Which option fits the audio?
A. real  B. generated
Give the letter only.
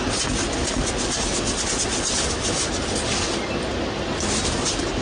A